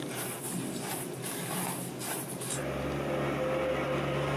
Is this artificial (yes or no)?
no